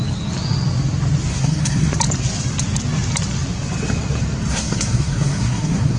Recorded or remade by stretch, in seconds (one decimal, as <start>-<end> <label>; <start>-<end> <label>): 0.0-1.3 recorded; 1.3-1.9 remade; 1.9-4.5 recorded; 4.5-6.0 remade